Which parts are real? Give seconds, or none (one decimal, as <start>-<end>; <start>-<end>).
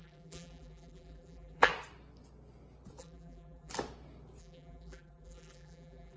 1.7-3.0; 3.7-4.4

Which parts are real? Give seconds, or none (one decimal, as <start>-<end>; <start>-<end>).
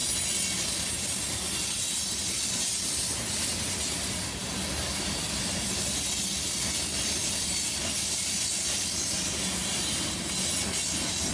0.0-11.3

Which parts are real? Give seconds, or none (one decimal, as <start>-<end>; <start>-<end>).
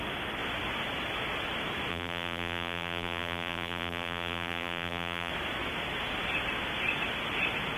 0.0-1.9; 5.3-7.8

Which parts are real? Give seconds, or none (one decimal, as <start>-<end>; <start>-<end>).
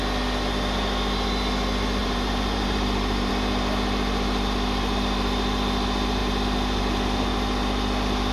0.0-2.0; 3.3-8.3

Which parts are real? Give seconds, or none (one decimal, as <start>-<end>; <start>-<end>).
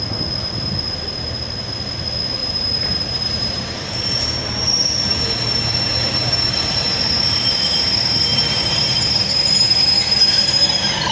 0.0-2.4; 7.0-8.3; 9.1-11.1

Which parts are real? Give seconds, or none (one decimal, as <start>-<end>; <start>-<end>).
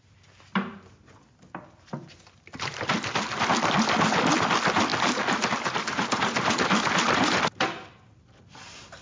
0.0-4.9; 5.5-9.0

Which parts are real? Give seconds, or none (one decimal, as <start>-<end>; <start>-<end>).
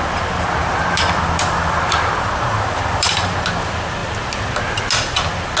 0.0-0.6; 3.3-5.6